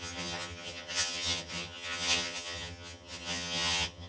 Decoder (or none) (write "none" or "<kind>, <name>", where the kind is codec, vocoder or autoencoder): vocoder, HiFi-GAN